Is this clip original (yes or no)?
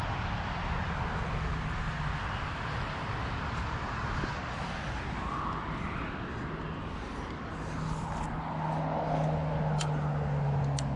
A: yes